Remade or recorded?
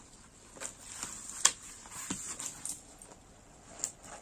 recorded